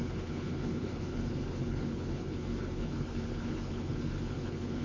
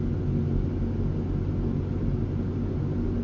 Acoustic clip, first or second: second